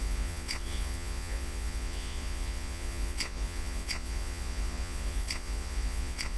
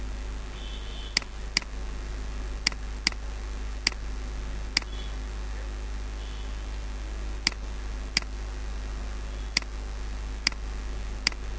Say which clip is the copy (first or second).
first